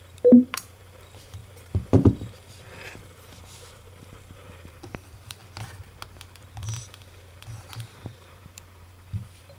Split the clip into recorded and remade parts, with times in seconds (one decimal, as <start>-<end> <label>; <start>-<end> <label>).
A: 0.0-5.4 remade; 5.4-6.5 recorded; 6.5-9.6 remade